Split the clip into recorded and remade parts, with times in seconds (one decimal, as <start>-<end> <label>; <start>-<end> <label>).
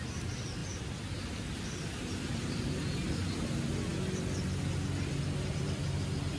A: 0.0-6.4 recorded